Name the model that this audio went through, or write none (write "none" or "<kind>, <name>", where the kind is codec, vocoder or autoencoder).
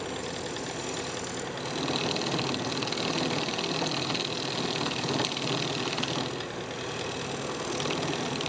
none